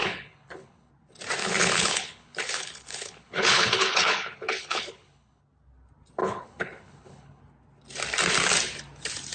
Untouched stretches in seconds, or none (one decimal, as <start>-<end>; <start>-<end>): 0.9-1.4; 5.4-6.2; 7.4-9.3